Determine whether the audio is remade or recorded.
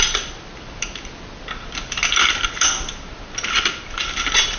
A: recorded